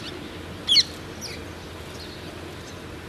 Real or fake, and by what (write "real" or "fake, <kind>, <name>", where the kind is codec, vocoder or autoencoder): real